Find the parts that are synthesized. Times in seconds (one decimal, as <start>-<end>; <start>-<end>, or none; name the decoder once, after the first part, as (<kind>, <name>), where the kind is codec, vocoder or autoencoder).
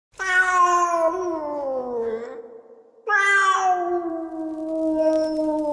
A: none